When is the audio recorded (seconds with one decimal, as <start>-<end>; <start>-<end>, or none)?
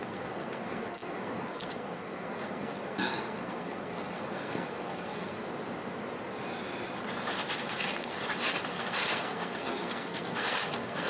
5.4-7.6; 8.2-8.7